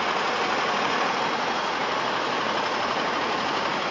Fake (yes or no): yes